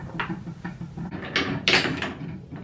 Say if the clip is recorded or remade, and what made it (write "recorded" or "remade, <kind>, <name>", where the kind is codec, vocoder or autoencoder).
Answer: recorded